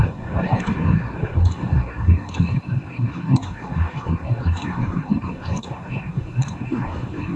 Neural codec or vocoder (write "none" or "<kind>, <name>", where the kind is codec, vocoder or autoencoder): codec, SNAC